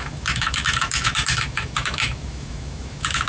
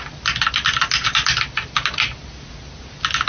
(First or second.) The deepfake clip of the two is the first